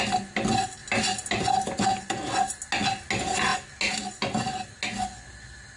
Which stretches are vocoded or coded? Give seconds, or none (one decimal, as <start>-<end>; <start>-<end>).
none